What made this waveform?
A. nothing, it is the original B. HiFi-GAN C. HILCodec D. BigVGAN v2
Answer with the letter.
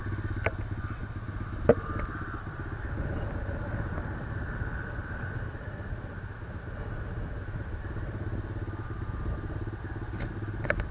A